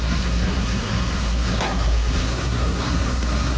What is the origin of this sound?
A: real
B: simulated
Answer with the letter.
B